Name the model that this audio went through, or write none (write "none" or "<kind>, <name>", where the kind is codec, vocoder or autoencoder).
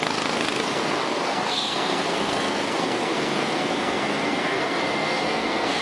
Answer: codec, SNAC